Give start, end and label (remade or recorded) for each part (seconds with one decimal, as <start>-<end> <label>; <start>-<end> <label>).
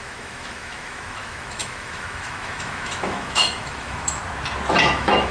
0.0-4.2 remade; 4.2-4.8 recorded; 4.8-5.3 remade